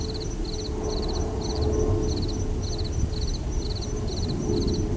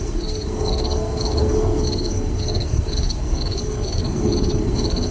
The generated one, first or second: second